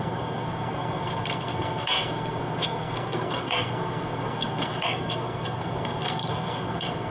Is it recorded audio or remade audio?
remade